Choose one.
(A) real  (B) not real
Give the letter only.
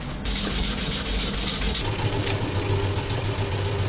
A